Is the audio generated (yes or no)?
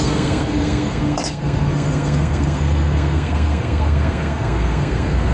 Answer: yes